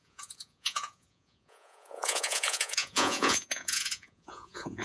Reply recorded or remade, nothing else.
remade